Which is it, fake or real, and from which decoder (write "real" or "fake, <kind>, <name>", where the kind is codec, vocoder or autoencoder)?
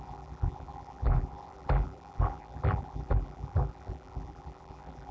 fake, vocoder, BigVGAN v2